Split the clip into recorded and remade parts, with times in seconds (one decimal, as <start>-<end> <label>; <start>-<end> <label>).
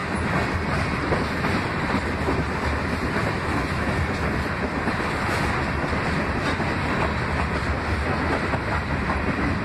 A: 0.0-9.6 recorded